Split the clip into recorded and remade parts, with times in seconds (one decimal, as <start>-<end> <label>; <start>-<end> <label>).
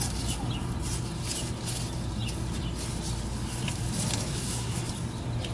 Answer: 0.0-4.3 recorded; 4.3-4.8 remade; 4.8-5.5 recorded